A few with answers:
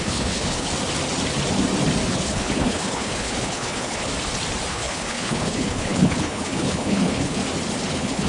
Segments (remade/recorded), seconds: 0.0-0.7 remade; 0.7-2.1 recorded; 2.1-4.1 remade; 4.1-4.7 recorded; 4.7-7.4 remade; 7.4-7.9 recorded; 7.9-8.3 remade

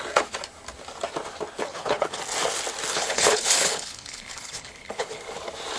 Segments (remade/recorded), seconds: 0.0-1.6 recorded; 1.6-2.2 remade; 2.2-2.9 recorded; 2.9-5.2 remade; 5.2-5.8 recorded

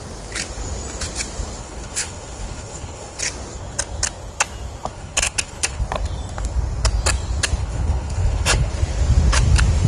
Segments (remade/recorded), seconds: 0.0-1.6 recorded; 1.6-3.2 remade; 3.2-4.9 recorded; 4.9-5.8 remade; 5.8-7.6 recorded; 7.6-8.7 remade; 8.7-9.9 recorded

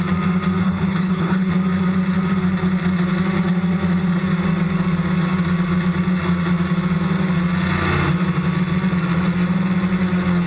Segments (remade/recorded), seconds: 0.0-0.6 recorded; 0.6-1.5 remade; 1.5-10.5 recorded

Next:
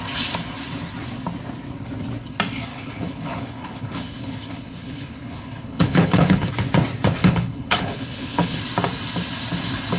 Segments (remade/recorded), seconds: 0.0-2.7 recorded; 2.7-6.5 remade; 6.5-7.2 recorded; 7.2-8.6 remade; 8.6-10.0 recorded

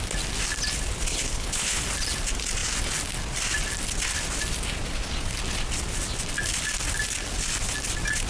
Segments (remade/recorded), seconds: 0.0-1.1 recorded; 1.1-1.8 remade; 1.8-8.3 recorded

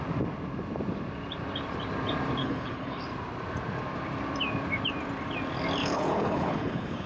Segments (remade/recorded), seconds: 0.0-2.4 recorded; 2.4-3.0 remade; 3.0-5.8 recorded; 5.8-7.1 remade

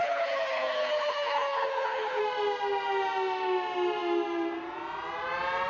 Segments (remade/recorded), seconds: 0.0-2.2 remade; 2.2-5.7 recorded